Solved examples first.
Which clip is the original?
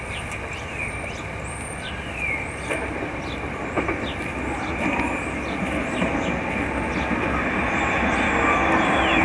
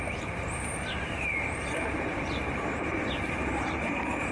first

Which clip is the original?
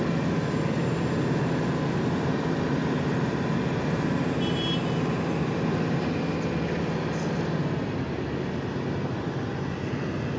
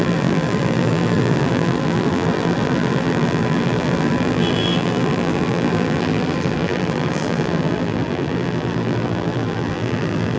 first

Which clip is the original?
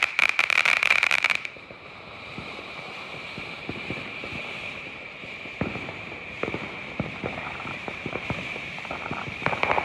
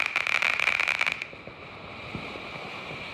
second